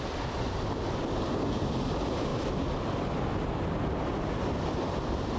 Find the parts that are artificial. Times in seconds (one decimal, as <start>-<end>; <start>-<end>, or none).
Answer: none